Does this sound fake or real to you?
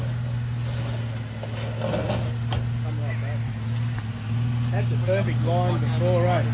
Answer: real